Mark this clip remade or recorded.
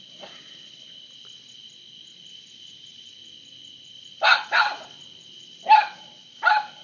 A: recorded